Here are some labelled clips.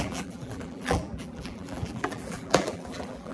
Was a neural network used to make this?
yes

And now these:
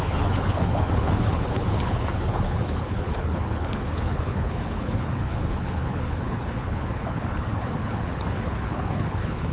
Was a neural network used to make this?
yes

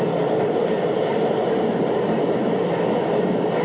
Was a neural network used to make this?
no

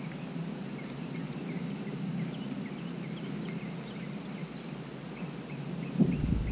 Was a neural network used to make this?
no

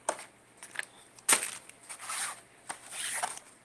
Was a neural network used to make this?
no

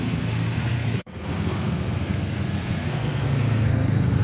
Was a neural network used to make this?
yes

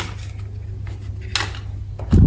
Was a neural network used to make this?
no